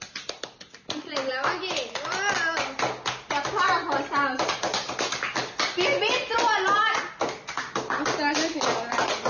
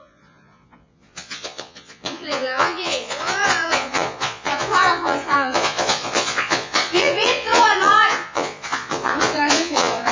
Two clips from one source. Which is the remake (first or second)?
second